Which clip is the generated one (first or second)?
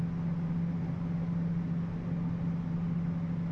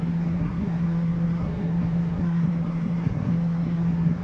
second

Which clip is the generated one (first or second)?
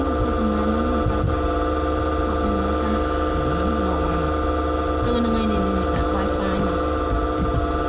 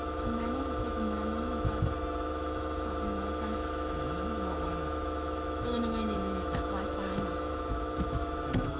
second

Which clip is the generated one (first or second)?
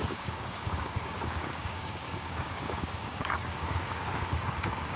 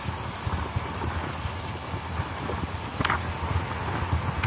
first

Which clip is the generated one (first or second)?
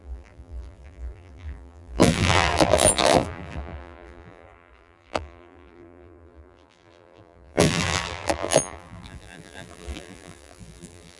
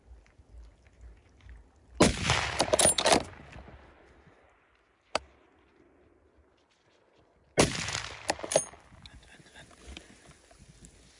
first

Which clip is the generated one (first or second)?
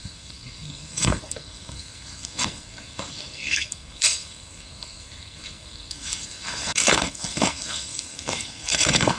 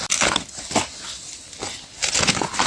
first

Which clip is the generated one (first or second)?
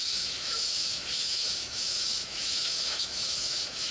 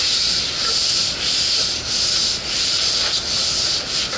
first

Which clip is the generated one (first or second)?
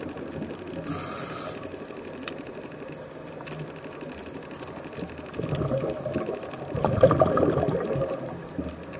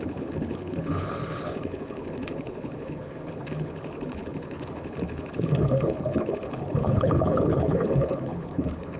second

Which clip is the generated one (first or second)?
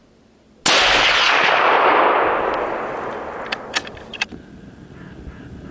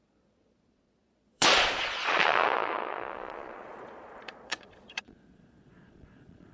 second